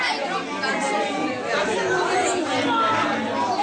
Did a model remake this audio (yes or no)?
no